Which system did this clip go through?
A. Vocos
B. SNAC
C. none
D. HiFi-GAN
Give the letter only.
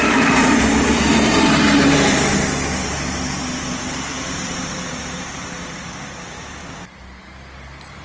C